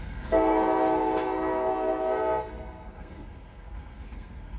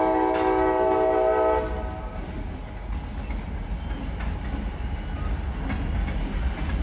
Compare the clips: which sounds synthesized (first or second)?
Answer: first